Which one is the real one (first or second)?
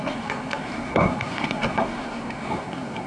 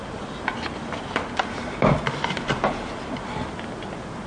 second